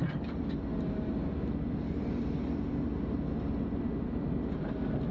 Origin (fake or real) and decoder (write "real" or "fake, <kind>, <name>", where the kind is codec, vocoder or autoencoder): real